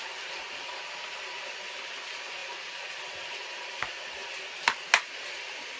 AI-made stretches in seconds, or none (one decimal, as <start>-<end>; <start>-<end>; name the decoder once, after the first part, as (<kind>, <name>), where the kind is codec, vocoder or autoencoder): none